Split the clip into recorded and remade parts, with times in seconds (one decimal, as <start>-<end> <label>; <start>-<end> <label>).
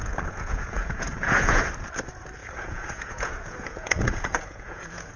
0.0-1.6 remade; 1.6-2.4 recorded; 2.4-5.2 remade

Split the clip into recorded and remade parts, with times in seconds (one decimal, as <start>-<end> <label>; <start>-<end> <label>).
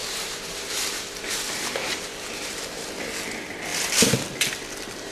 0.0-2.9 remade; 2.9-5.1 recorded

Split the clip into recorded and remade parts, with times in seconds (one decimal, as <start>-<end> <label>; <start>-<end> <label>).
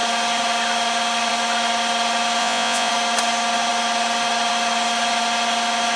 0.0-2.4 recorded; 2.4-2.9 remade; 2.9-6.0 recorded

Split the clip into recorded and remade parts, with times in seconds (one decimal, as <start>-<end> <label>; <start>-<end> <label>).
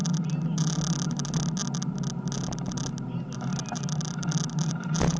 0.0-5.2 recorded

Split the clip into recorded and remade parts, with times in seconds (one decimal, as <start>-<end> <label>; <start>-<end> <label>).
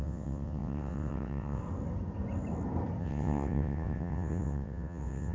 0.0-1.6 remade; 1.6-3.0 recorded; 3.0-5.3 remade